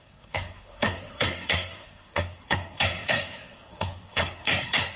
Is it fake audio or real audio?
fake